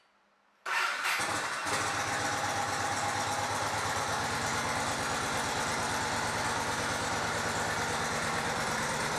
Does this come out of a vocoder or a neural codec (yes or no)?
no